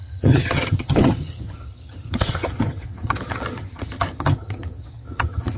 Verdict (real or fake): fake